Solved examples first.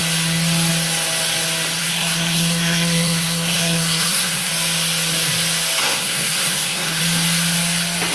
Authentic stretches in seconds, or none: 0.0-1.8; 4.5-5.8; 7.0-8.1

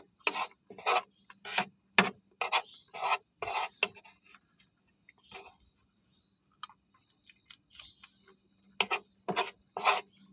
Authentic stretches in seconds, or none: 0.0-10.3

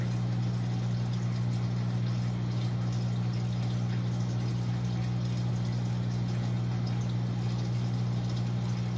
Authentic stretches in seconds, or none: 0.0-9.0

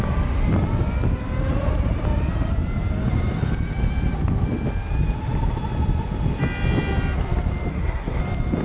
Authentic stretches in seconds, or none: 0.0-7.7; 8.2-8.6

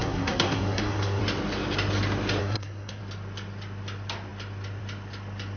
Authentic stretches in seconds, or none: 1.2-2.4; 3.0-5.6

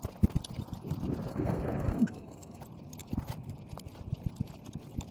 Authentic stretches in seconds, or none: 0.0-1.3; 2.6-5.1

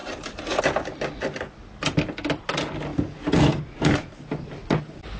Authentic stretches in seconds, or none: 0.0-5.2